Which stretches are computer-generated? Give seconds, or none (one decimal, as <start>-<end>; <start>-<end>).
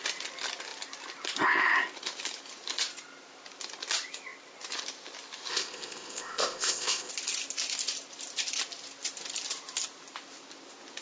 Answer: 5.5-7.1